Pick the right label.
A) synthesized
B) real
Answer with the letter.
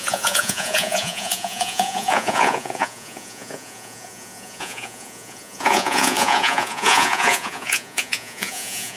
A